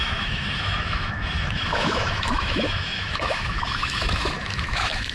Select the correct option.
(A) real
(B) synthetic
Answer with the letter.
B